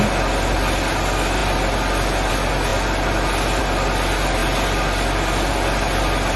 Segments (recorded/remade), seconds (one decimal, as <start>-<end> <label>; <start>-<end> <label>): 0.0-6.4 recorded